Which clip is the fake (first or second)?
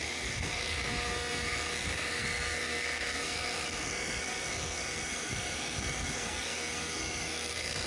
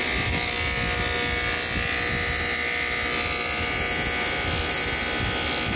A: first